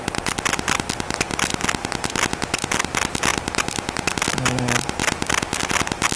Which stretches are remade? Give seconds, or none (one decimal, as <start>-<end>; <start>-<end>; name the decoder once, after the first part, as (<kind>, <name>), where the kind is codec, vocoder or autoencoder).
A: none